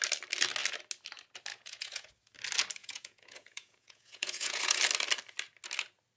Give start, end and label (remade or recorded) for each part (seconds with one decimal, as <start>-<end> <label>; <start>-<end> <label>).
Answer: 0.0-1.5 recorded; 1.5-2.1 remade; 2.1-2.8 recorded; 2.8-4.8 remade; 4.8-6.2 recorded